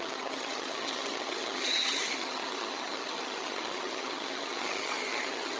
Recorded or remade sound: remade